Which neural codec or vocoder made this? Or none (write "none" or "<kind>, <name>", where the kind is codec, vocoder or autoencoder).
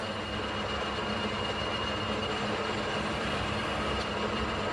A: none